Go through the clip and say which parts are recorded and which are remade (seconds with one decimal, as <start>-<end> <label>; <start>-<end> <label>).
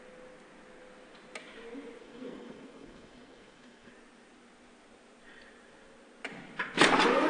0.0-2.0 recorded; 2.0-3.9 remade; 3.9-7.3 recorded